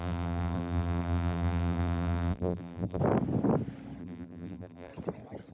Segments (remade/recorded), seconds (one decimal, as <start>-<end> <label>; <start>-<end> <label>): 0.0-3.0 remade; 3.0-4.0 recorded; 4.0-4.9 remade; 4.9-5.5 recorded